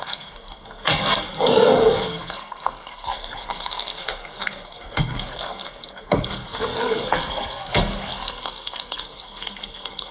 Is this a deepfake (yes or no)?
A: yes